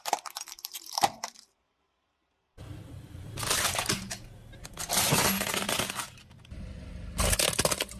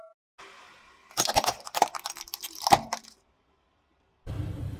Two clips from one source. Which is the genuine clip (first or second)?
second